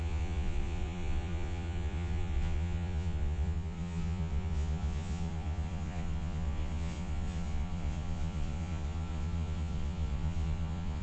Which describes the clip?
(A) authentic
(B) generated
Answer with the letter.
B